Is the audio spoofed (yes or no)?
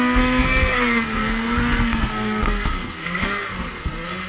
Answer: yes